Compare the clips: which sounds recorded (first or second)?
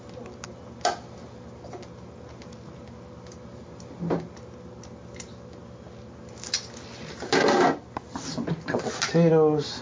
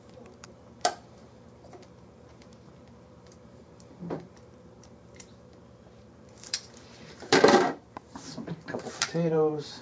first